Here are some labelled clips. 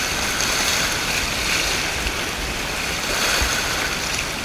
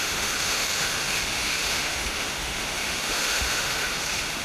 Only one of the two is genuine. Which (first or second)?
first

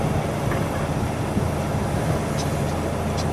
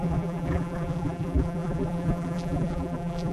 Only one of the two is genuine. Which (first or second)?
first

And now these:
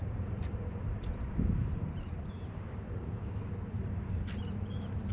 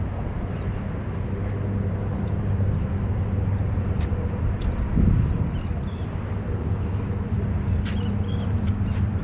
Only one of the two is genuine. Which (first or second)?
second